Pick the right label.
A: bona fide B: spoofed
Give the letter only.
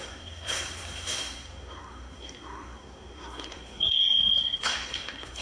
B